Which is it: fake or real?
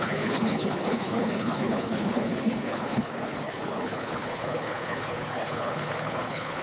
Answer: fake